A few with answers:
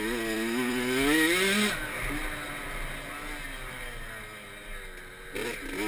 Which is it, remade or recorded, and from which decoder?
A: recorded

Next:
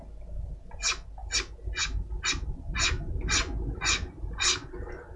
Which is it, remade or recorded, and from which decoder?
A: recorded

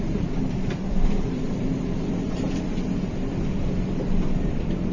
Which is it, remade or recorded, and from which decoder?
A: remade, vocoder, BigVGAN v2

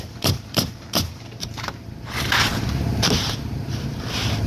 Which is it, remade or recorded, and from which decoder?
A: remade, vocoder, BigVGAN v2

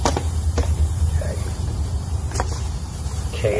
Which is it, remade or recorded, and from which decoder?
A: remade, vocoder, BigVGAN v2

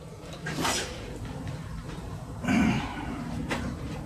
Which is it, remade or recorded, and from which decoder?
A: remade, vocoder, BigVGAN v2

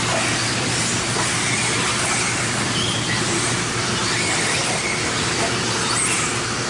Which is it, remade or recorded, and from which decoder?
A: recorded